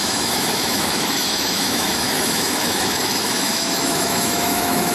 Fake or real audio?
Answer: fake